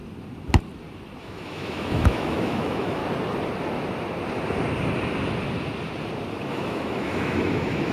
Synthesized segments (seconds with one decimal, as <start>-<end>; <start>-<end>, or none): 1.2-3.0; 6.5-7.9